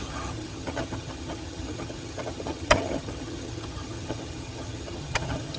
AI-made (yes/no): yes